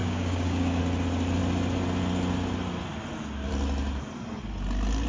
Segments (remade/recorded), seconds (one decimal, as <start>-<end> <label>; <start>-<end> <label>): 0.0-0.8 remade; 0.8-5.1 recorded